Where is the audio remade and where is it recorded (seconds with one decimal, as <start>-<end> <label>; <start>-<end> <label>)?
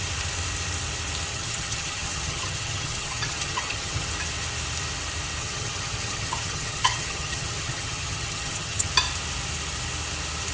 0.0-1.3 recorded; 1.3-4.1 remade; 4.1-5.4 recorded; 5.4-8.9 remade; 8.9-10.5 recorded